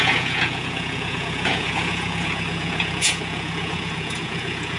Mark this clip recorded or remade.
remade